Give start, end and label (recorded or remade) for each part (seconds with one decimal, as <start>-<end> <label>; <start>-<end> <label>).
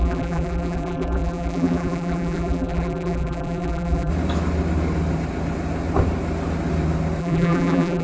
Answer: 0.0-4.1 remade; 4.1-7.2 recorded; 7.2-8.0 remade